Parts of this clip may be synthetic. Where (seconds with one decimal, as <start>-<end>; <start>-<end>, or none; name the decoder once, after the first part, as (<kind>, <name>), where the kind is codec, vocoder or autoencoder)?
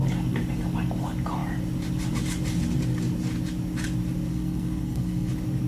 4.3-5.3 (codec, SNAC)